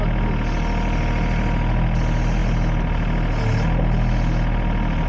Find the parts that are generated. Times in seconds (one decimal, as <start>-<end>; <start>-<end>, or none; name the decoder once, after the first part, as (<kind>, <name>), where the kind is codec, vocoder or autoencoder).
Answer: none